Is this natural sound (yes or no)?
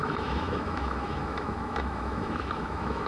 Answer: no